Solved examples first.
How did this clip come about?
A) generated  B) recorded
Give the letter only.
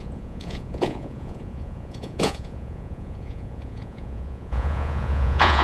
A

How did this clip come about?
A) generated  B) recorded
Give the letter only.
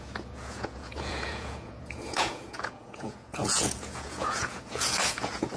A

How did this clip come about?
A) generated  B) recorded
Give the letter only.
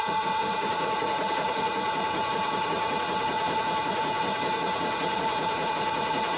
A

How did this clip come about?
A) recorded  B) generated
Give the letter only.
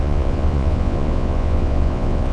B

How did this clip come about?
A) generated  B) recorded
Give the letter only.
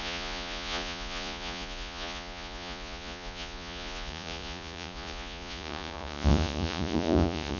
A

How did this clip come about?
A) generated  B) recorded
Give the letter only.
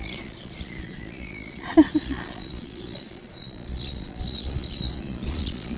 A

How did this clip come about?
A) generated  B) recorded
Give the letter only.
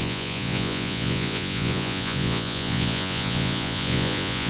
A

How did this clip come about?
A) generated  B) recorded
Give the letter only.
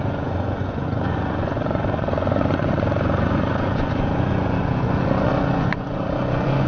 A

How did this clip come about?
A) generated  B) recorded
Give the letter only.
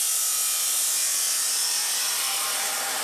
B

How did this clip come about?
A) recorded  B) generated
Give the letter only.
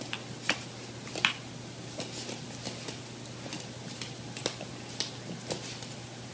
A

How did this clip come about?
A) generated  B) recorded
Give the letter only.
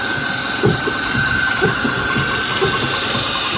B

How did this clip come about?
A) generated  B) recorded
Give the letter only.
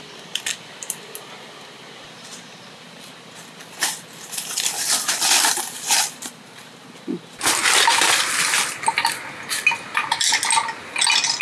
B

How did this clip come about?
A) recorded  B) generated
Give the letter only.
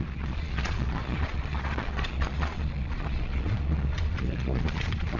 B